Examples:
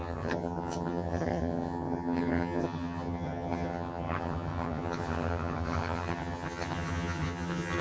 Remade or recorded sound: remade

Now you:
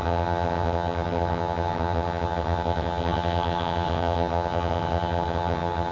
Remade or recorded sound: remade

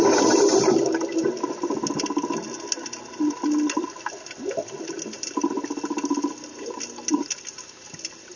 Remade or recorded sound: recorded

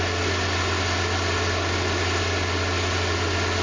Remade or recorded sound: recorded